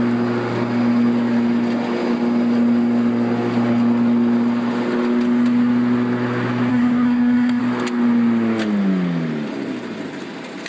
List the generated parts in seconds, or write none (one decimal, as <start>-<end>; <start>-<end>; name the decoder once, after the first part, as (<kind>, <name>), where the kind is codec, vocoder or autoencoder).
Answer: 6.7-7.6 (codec, SNAC)